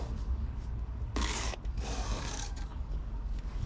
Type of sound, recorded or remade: remade